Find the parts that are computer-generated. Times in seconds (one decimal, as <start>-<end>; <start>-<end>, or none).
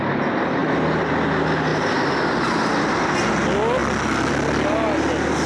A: none